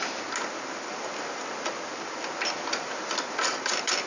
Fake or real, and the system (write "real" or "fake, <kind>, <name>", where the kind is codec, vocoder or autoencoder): real